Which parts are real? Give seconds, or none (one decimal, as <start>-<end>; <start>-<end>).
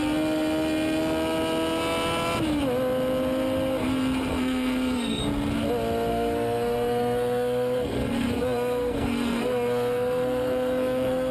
0.0-4.3; 5.2-6.1